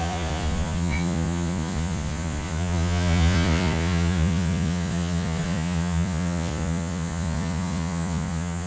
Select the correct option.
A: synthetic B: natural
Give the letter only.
A